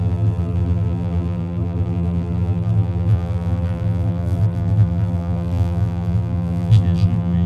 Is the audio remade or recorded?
remade